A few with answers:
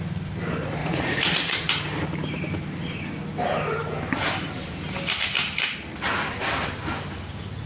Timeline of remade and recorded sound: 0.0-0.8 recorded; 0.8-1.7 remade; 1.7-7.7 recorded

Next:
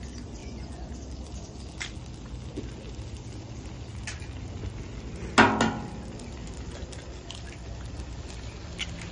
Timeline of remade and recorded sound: 0.0-0.4 recorded; 0.4-0.9 remade; 0.9-9.1 recorded